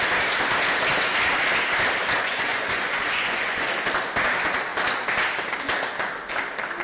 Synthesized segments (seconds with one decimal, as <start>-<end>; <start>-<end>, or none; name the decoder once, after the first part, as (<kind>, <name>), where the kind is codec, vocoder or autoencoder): 2.2-3.7 (vocoder, Vocos)